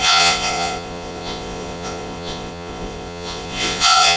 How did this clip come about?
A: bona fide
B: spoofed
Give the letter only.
B